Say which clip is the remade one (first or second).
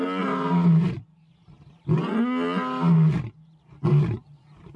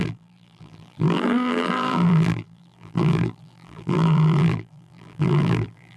second